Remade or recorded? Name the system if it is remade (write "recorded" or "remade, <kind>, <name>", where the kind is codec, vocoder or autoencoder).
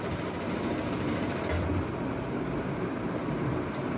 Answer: recorded